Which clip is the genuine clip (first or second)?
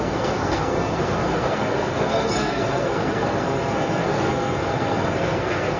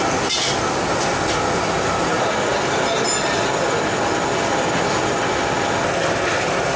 second